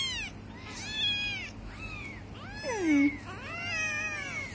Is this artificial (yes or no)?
no